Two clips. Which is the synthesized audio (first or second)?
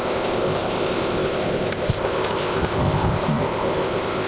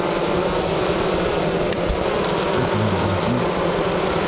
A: first